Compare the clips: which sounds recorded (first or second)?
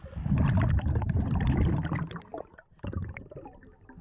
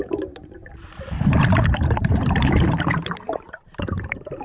first